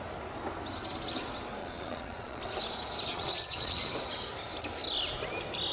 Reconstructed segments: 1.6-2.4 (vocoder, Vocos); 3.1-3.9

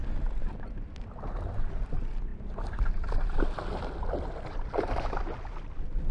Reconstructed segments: none

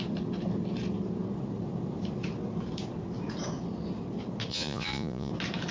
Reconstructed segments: 4.5-5.3 (vocoder, Vocos)

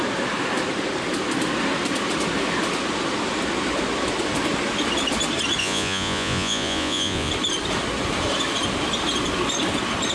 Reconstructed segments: 5.6-7.3 (vocoder, Vocos)

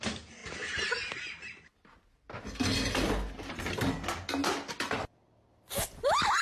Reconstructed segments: none

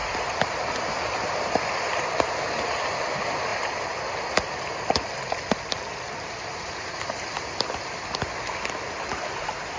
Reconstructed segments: none

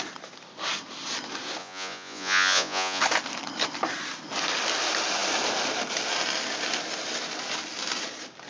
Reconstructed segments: 1.6-3.0 (vocoder, Vocos)